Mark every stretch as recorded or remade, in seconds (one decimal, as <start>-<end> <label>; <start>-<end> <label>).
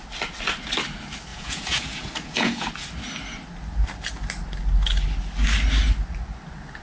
0.0-1.3 recorded; 1.3-2.7 remade; 2.7-6.8 recorded